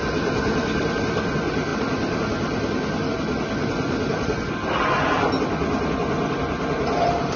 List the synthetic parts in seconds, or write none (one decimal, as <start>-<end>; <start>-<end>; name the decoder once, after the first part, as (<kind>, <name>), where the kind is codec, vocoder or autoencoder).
1.7-3.1 (vocoder, BigVGAN v2)